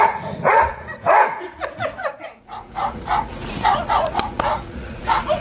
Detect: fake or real fake